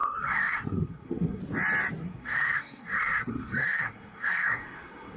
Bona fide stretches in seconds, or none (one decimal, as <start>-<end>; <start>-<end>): 1.4-2.0